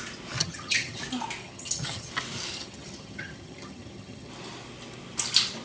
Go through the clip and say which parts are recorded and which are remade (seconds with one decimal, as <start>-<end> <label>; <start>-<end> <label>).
0.0-0.4 recorded; 0.4-1.0 remade; 1.0-1.4 recorded; 1.4-2.1 remade; 2.1-2.5 recorded; 2.5-4.3 remade; 4.3-5.6 recorded